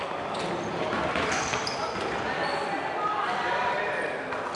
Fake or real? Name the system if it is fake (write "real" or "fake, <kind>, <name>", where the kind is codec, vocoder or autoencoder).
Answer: fake, vocoder, BigVGAN v2